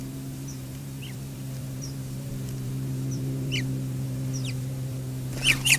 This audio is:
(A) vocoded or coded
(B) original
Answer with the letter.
A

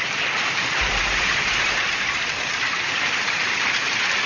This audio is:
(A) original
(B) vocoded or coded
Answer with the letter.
B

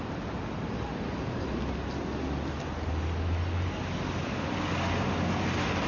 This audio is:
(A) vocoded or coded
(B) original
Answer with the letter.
B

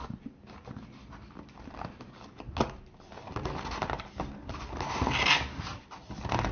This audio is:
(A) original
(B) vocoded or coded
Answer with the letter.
A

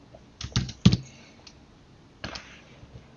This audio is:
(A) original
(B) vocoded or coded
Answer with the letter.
A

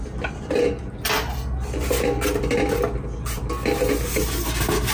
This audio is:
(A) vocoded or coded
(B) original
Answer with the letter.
B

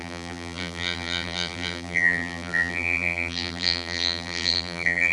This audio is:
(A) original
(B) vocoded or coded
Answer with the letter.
B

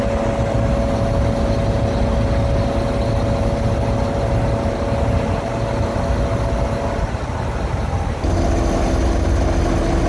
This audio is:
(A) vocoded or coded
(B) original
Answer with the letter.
B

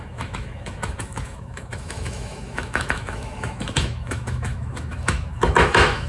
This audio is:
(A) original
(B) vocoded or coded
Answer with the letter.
B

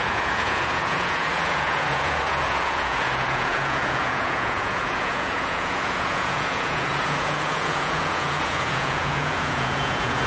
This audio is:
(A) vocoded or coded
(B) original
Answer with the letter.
A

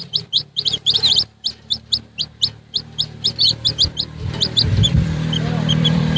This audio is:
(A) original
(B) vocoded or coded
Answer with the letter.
B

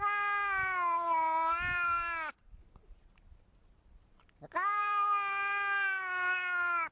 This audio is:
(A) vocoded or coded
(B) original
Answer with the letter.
B